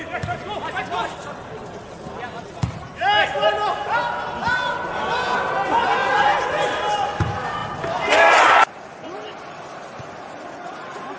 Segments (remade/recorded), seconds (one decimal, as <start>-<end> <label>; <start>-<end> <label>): 0.0-11.2 recorded